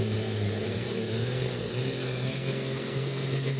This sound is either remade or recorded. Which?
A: remade